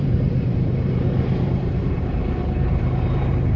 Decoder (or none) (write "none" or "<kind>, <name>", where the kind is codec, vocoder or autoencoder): vocoder, BigVGAN v2